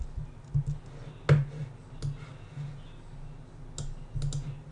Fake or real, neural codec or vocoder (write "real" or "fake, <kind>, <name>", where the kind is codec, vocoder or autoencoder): real